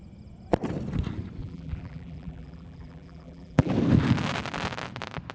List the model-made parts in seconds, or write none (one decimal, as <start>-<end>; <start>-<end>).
1.4-3.7

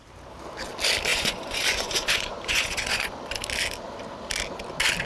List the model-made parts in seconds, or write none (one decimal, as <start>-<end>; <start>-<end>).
1.1-3.3